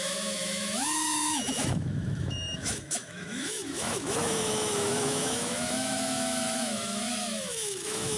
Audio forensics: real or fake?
fake